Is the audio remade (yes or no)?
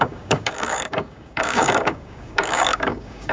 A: yes